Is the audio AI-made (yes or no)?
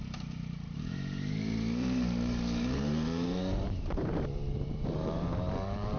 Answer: yes